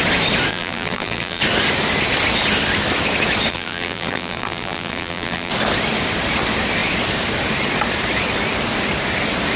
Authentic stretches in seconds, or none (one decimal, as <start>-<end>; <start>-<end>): 0.0-0.5; 1.4-3.5; 5.5-9.6